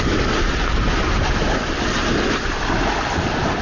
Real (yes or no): yes